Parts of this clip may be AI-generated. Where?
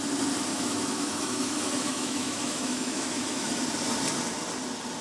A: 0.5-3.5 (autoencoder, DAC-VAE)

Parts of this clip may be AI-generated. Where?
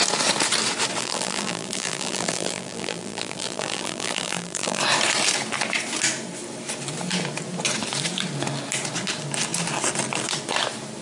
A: 1.0-4.8 (vocoder, BigVGAN v2)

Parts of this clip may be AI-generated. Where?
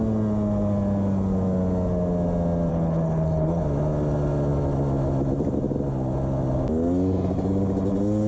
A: 2.7-3.6 (codec, HILCodec)